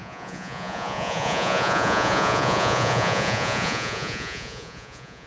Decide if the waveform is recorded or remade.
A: remade